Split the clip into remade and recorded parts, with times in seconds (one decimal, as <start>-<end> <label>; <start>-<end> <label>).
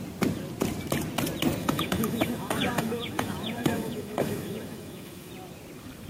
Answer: 0.0-1.6 recorded; 1.6-5.3 remade; 5.3-6.1 recorded